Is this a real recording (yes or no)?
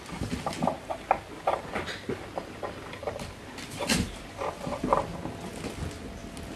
yes